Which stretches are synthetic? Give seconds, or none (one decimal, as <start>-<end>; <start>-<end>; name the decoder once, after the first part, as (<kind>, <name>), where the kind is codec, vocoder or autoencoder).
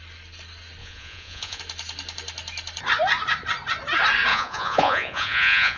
0.8-1.6 (vocoder, Vocos); 4.3-5.8